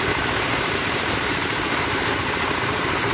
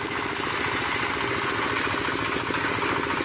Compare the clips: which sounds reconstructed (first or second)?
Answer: first